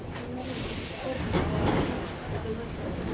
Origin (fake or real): real